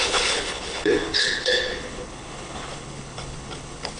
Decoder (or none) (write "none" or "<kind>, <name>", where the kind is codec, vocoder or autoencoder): codec, HILCodec